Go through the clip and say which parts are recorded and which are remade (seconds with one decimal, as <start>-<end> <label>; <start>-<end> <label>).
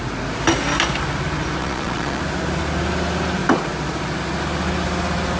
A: 0.0-1.6 recorded; 1.6-2.2 remade; 2.2-5.4 recorded